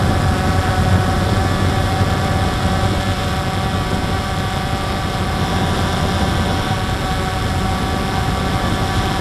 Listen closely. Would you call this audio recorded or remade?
recorded